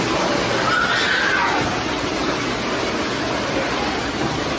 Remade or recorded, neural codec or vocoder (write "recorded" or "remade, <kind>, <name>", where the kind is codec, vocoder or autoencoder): recorded